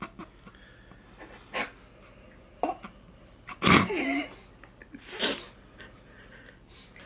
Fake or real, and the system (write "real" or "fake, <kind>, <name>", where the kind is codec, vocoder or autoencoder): real